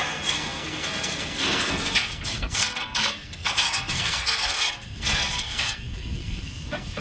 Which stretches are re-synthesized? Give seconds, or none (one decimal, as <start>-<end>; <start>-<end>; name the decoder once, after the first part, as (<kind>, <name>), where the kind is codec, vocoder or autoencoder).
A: 0.0-7.0 (codec, SNAC)